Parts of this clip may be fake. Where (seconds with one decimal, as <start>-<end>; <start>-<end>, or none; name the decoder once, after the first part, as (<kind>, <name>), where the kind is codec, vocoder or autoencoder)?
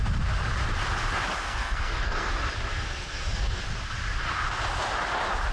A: 1.4-2.3 (codec, SNAC); 2.7-3.6